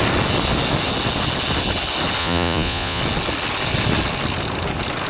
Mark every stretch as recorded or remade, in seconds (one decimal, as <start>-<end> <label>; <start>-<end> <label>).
0.0-2.2 recorded; 2.2-3.0 remade; 3.0-5.1 recorded

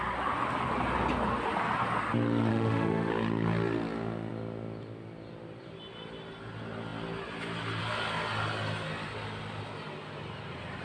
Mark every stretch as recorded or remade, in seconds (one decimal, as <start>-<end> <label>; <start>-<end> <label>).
0.0-2.5 recorded; 2.5-3.1 remade; 3.1-10.8 recorded

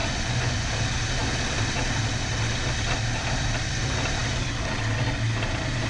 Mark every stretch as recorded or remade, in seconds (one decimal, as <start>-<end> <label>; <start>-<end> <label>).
0.0-0.7 remade; 0.7-5.9 recorded